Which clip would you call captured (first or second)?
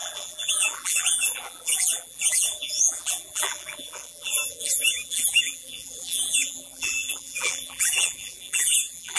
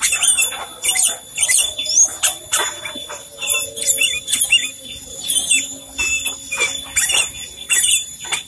second